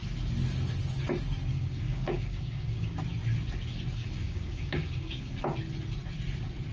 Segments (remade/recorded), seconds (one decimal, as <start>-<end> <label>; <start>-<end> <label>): 0.0-1.5 recorded; 1.5-3.0 remade; 3.0-4.0 recorded; 4.0-5.4 remade; 5.4-6.7 recorded